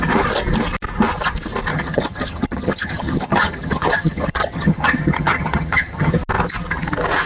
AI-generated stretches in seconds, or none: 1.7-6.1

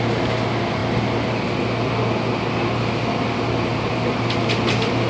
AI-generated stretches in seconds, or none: none

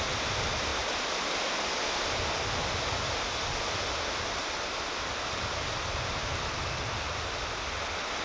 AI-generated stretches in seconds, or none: none

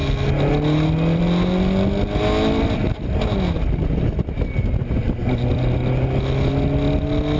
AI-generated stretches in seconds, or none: none

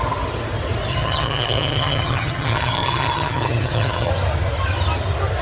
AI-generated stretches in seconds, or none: 0.9-4.1

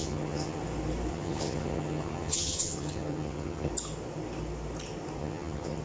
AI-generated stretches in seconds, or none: 0.0-0.6; 1.1-3.7; 5.2-5.8

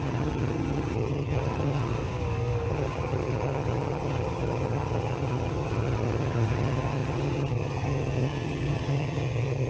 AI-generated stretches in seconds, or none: 0.0-2.0; 2.7-9.7